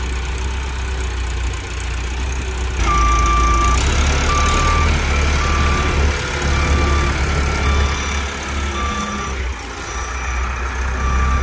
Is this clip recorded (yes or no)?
yes